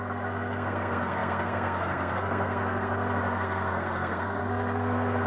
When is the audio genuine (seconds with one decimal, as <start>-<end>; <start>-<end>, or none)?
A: none